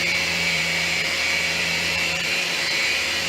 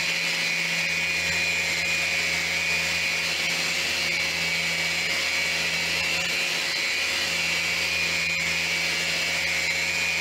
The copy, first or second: first